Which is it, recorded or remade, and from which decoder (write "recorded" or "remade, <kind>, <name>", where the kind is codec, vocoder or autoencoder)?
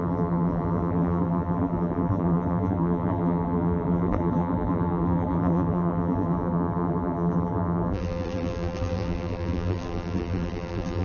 remade, vocoder, BigVGAN v2